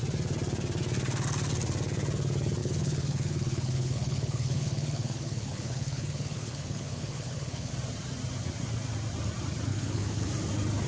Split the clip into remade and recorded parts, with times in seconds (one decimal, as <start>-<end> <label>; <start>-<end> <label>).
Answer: 0.0-2.6 recorded; 2.6-7.7 remade; 7.7-9.7 recorded; 9.7-10.3 remade; 10.3-10.9 recorded

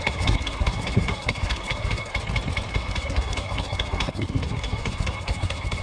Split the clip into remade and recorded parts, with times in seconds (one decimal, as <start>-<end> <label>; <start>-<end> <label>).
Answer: 0.0-2.1 remade; 2.1-2.7 recorded; 2.7-5.8 remade

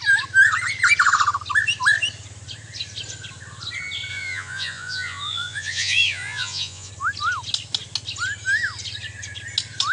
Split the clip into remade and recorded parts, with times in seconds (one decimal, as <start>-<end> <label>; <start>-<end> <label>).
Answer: 0.0-4.1 recorded; 4.1-6.9 remade; 6.9-9.9 recorded

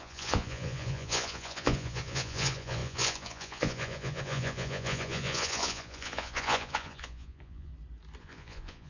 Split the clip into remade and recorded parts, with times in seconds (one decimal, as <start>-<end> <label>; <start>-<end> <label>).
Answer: 0.0-7.7 remade; 7.7-8.2 recorded; 8.2-8.9 remade